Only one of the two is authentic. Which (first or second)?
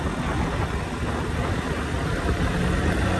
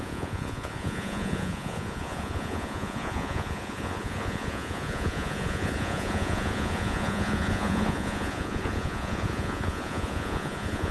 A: first